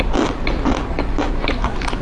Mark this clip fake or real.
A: real